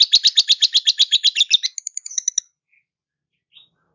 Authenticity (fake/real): real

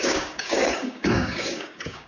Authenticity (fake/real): fake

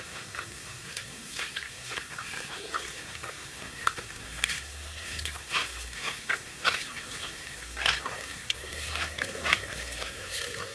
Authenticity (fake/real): fake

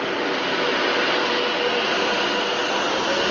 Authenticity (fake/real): real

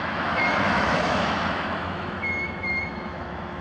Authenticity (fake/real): fake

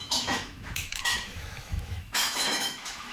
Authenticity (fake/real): fake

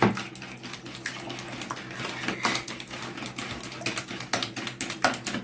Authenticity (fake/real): real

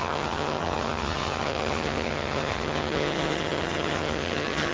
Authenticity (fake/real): fake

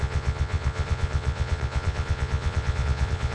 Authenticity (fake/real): fake